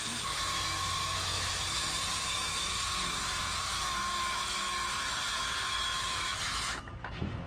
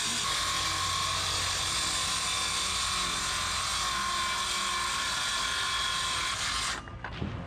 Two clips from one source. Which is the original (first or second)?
second